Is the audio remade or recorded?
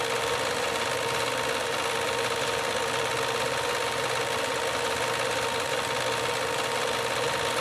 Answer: recorded